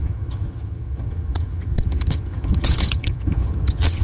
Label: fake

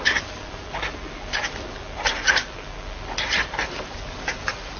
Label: real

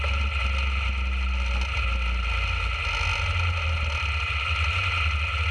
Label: real